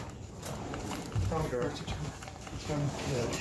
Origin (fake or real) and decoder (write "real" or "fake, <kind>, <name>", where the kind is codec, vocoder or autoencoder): fake, vocoder, BigVGAN v2